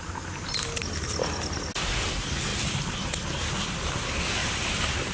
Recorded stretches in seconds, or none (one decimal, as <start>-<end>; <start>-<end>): 0.0-2.5; 3.1-4.4